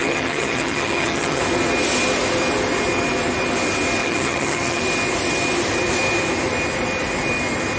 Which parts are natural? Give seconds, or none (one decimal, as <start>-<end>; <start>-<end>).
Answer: 1.4-4.0; 4.8-7.8